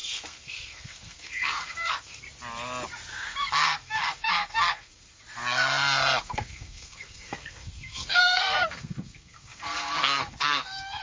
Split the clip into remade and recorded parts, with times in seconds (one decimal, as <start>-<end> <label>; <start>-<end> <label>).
0.0-2.2 remade; 2.2-3.1 recorded; 3.1-5.2 remade; 5.2-6.2 recorded; 6.2-11.0 remade